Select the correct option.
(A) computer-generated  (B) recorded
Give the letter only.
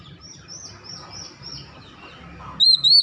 B